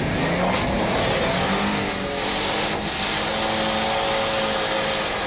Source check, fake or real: real